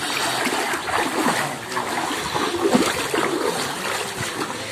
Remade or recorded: recorded